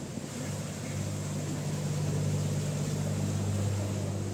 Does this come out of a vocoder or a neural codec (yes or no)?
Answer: no